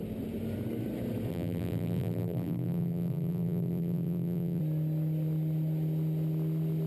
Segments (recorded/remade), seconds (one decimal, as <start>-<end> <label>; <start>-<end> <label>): 0.0-1.3 recorded; 1.3-4.6 remade; 4.6-6.9 recorded